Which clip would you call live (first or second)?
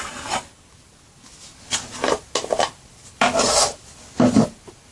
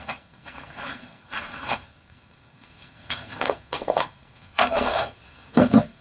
first